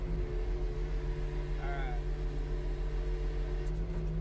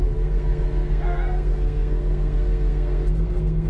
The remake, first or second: second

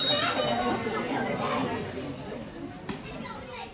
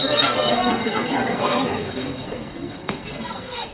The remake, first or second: second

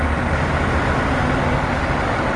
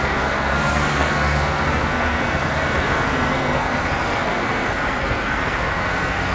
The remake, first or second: second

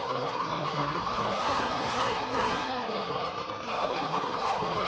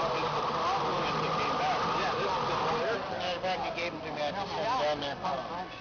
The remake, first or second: first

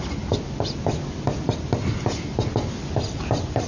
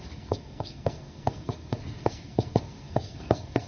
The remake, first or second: second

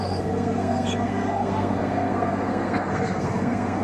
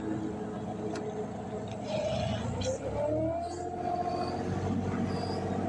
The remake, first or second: first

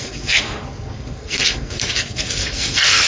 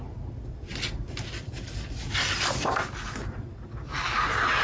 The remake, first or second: first